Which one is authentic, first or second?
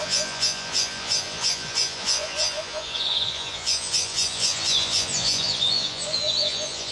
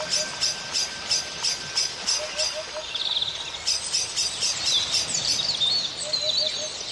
second